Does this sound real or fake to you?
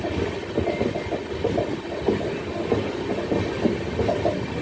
real